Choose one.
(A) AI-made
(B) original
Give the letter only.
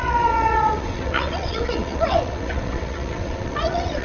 A